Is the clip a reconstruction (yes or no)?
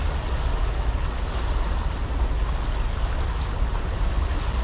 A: no